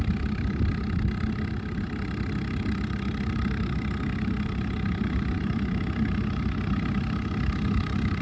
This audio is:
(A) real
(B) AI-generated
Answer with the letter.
A